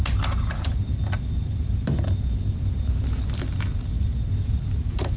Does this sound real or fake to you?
real